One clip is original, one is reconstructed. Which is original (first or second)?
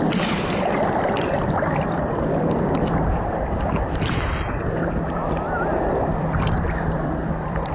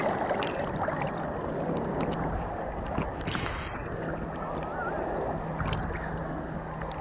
second